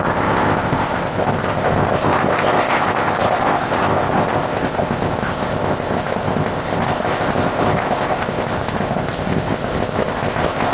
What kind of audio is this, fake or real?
fake